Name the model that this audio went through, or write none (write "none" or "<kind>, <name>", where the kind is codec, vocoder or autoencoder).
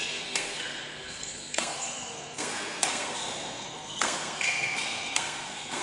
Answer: codec, SNAC